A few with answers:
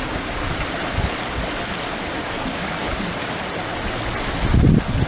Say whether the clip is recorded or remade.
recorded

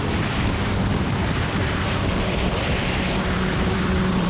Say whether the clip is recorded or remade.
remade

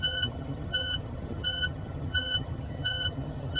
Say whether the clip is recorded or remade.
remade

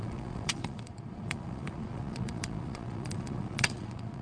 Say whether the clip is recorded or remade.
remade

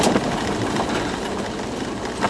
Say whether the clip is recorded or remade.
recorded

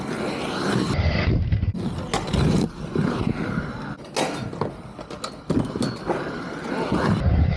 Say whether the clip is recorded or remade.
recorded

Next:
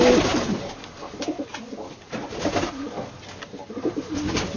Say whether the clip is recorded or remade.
recorded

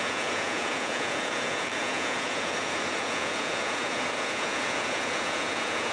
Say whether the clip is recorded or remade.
remade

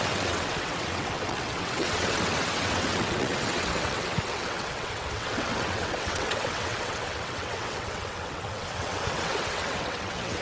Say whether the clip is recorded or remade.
remade